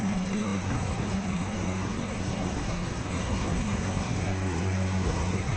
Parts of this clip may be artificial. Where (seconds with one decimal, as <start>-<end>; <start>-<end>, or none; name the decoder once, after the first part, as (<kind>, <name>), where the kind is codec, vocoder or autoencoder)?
0.0-5.6 (codec, SNAC)